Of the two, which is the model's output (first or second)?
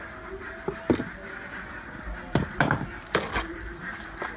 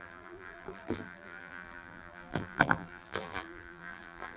second